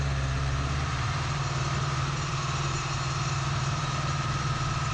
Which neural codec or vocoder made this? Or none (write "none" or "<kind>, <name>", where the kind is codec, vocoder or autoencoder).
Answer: vocoder, BigVGAN v2